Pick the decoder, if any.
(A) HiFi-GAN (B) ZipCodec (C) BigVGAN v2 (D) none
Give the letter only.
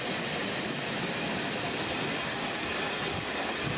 D